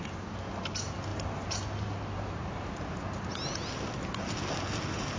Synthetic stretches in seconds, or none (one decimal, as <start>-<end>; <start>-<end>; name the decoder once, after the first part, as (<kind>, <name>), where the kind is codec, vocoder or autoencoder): 1.1-3.0 (vocoder, BigVGAN v2)